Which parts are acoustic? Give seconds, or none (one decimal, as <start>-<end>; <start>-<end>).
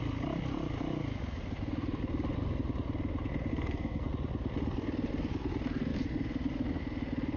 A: 0.0-3.5; 4.1-7.4